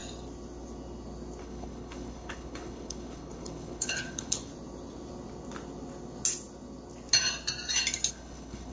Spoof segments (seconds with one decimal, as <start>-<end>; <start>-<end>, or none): 1.4-4.5; 8.1-8.7